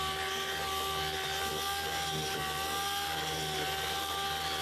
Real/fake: real